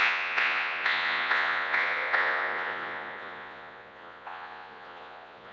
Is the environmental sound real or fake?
fake